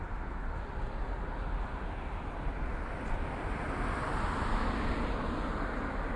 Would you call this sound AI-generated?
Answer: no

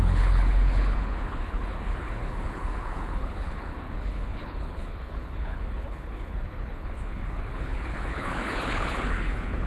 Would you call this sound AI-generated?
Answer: yes